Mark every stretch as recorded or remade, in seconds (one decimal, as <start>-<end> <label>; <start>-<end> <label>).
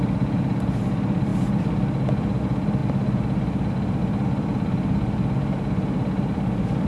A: 0.0-6.9 recorded